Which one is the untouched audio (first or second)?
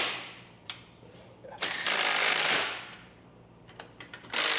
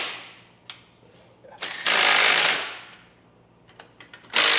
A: second